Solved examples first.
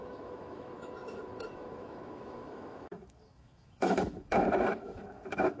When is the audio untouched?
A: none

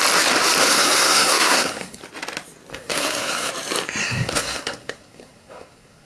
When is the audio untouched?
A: 0.0-0.6; 2.0-2.7; 3.5-4.0

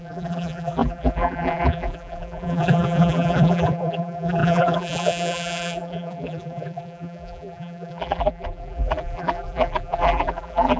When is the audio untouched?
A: none

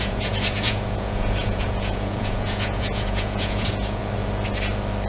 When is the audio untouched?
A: 4.0-5.1

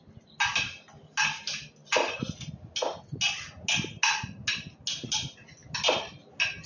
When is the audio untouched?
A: 0.0-6.7

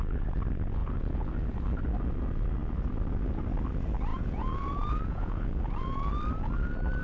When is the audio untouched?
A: 0.0-0.8; 1.3-4.1; 6.1-7.0

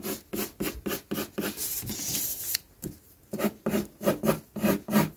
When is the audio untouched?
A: 0.0-1.6; 4.1-5.2

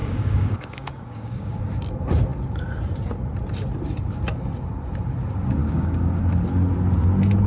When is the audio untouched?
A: 1.6-5.6; 6.2-7.5